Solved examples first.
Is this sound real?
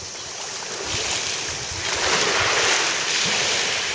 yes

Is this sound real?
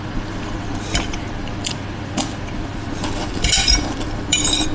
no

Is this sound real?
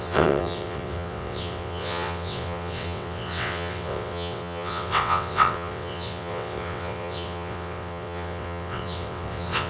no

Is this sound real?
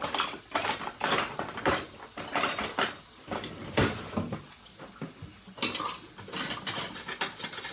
yes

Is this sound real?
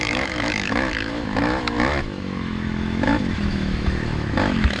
no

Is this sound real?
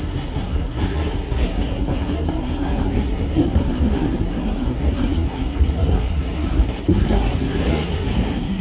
no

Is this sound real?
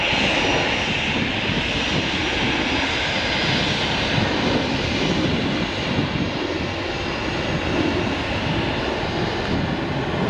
yes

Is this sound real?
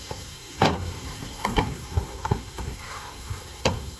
no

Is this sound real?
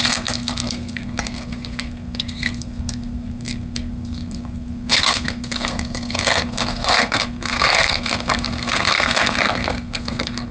no